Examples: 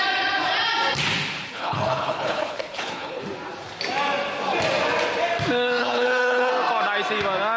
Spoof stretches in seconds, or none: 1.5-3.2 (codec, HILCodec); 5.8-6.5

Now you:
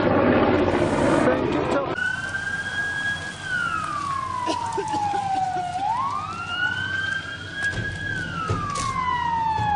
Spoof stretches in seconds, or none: none

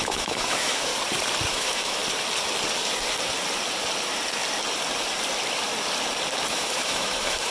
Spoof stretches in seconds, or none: 0.0-0.9 (autoencoder, DAC-VAE); 1.5-2.0; 6.5-7.5

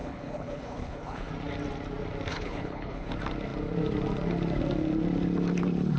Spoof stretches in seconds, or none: 0.0-1.3 (codec, HILCodec); 2.3-3.1

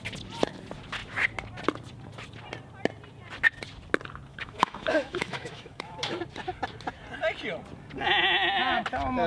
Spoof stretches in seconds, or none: 4.3-6.2 (autoencoder, DAC-VAE)